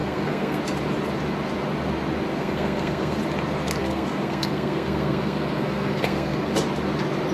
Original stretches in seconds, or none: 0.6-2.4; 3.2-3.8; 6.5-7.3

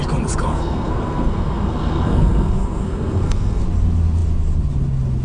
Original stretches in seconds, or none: 0.0-0.5; 3.6-5.2

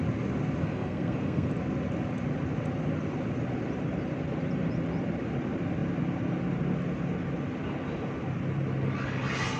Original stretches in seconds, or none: 0.0-0.6; 1.5-9.6